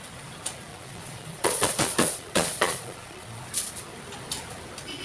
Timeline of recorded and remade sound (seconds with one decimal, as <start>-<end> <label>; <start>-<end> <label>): 0.0-0.7 recorded; 0.7-3.4 remade; 3.4-5.0 recorded